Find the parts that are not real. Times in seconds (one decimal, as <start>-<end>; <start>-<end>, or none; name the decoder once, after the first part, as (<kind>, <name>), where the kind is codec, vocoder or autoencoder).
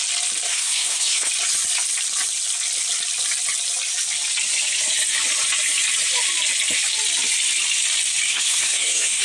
0.5-1.3 (codec, SNAC); 8.3-9.2